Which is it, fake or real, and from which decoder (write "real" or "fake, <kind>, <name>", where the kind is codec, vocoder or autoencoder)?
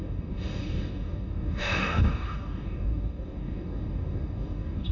fake, codec, DAC